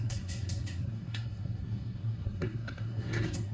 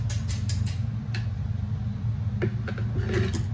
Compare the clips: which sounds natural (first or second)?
second